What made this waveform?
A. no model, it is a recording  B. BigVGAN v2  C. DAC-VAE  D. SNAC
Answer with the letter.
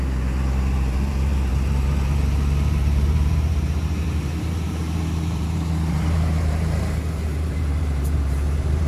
B